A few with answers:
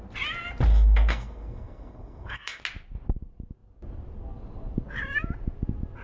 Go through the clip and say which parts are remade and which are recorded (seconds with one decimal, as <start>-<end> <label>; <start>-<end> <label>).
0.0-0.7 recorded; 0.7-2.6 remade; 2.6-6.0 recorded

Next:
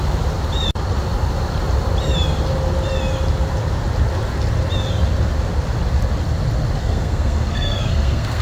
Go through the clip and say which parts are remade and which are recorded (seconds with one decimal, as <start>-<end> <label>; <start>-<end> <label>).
0.0-6.8 recorded; 6.8-8.4 remade

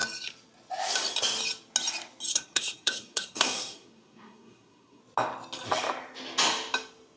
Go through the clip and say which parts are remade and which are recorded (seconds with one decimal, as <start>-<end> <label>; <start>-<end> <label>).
0.0-2.3 recorded; 2.3-5.0 remade; 5.0-7.2 recorded

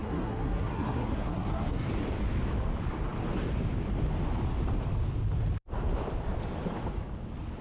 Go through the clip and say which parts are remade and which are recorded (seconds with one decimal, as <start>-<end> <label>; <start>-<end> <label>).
0.0-1.9 remade; 1.9-7.6 recorded

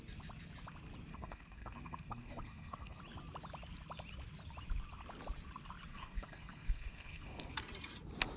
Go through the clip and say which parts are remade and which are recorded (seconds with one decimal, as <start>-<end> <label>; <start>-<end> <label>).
0.0-1.1 recorded; 1.1-3.0 remade; 3.0-5.9 recorded; 5.9-7.5 remade; 7.5-8.4 recorded